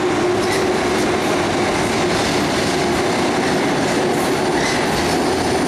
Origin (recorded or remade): recorded